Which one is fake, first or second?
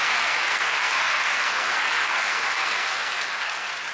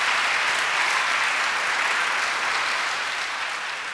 first